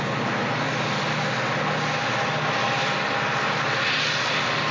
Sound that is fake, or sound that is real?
real